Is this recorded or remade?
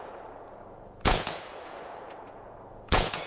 remade